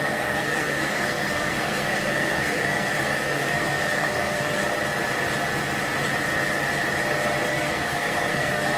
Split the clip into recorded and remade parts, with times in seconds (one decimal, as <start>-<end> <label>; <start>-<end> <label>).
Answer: 0.0-4.6 remade; 4.6-7.5 recorded; 7.5-8.8 remade